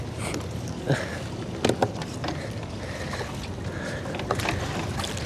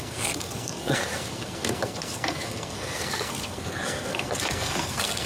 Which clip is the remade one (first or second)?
second